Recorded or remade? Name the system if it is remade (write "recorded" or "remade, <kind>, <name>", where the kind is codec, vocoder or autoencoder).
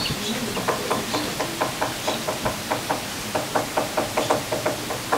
recorded